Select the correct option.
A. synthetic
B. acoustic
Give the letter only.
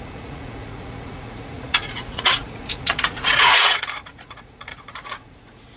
A